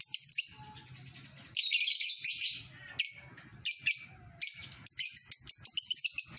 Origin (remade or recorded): recorded